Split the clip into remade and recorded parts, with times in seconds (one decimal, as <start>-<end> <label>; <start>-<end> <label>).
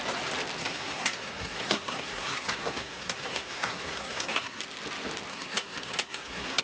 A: 0.0-0.6 recorded; 0.6-4.6 remade; 4.6-5.3 recorded; 5.3-6.6 remade